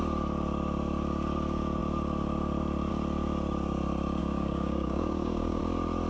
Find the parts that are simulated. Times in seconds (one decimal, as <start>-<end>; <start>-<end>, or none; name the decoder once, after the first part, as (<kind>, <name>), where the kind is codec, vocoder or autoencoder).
4.2-5.6 (codec, DAC)